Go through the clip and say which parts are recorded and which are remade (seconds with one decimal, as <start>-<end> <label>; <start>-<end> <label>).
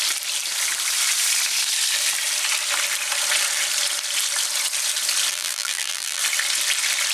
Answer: 0.0-5.3 recorded; 5.3-6.2 remade; 6.2-7.1 recorded